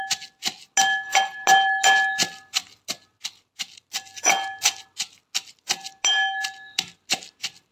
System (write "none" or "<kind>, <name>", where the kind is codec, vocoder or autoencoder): none